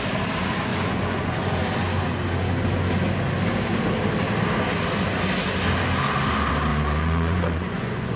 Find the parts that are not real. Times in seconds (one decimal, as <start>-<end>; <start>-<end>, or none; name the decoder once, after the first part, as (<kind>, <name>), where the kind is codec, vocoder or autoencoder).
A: 0.7-1.6 (vocoder, Vocos); 6.7-8.2